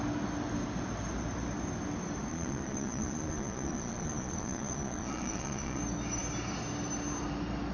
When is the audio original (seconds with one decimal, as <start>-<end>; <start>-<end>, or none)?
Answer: 0.0-2.3; 5.8-7.7